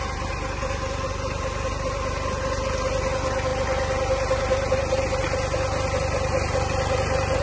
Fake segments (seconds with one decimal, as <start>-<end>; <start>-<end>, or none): none